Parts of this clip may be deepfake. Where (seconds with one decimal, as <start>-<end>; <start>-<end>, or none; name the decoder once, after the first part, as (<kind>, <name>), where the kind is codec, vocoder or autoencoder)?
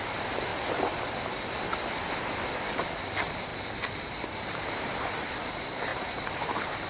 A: 0.0-0.5 (vocoder, BigVGAN v2); 3.1-3.5; 4.5-6.9